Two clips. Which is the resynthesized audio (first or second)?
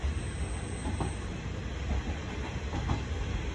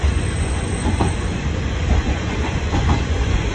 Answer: second